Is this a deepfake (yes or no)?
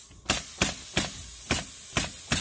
no